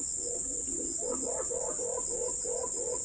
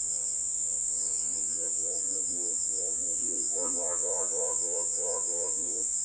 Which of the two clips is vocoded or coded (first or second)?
second